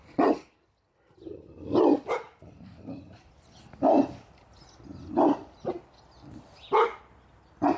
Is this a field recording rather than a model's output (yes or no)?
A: yes